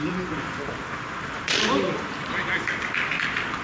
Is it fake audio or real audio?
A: real